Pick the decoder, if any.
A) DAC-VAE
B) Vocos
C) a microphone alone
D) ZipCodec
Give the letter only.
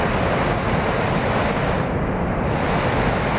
C